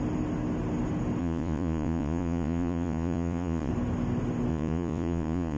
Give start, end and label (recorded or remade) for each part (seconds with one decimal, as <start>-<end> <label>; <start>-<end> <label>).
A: 0.0-1.2 recorded; 1.2-3.7 remade; 3.7-4.5 recorded; 4.5-5.6 remade